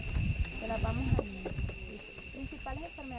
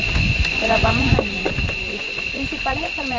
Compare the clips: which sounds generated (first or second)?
second